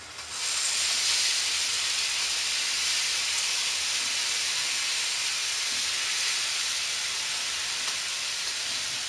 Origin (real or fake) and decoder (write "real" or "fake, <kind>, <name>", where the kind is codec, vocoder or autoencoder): real